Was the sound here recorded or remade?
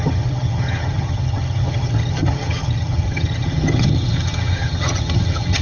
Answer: remade